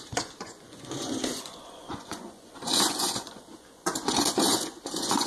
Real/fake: fake